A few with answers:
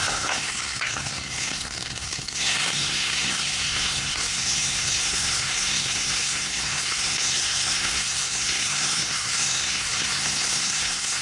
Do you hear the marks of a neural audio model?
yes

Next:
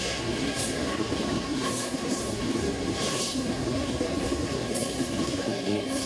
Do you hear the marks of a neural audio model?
yes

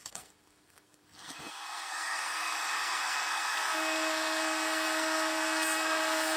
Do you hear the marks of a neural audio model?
yes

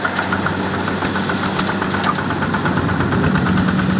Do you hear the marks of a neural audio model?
no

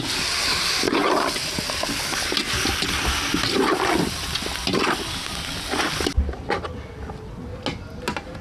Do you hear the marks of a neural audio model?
no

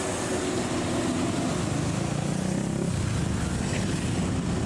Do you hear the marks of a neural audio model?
no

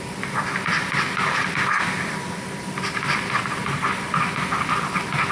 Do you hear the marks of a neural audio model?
no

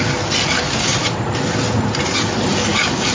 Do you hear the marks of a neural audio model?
no